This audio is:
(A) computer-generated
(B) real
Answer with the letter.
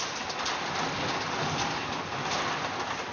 B